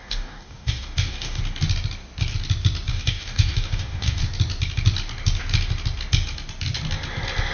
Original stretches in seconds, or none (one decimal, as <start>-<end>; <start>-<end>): 1.4-2.9; 4.2-7.5

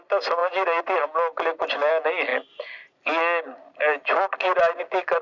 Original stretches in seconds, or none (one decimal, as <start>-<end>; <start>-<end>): 0.0-5.2

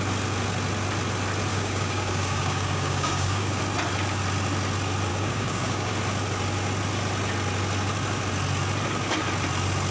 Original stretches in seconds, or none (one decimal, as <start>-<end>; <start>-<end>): 0.0-1.5; 3.6-5.1; 5.9-9.9

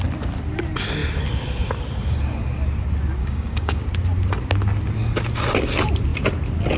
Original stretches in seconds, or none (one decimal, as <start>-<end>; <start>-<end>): 0.0-3.2; 3.8-6.8

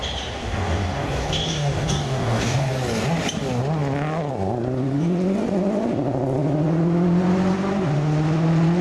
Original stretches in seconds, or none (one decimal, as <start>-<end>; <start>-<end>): 0.0-0.4; 2.7-8.8

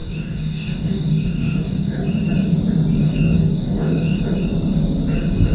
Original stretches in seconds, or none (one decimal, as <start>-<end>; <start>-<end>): 2.0-3.0; 4.2-5.5

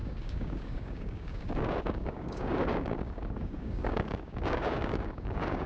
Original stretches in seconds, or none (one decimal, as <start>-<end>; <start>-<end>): none